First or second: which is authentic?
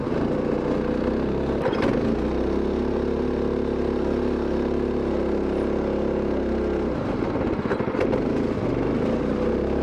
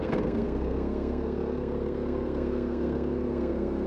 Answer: first